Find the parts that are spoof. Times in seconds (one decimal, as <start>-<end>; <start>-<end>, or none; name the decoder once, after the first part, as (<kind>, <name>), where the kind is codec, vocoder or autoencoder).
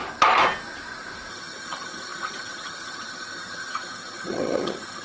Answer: 1.3-5.0 (vocoder, HiFi-GAN)